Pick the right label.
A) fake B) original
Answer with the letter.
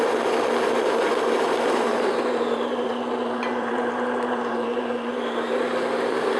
A